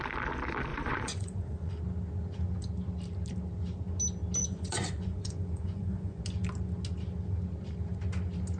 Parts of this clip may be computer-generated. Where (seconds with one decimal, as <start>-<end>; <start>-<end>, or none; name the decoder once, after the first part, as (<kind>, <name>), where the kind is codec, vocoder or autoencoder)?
0.7-1.8 (vocoder, Vocos); 4.4-6.2